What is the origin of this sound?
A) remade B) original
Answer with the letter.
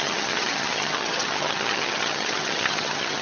A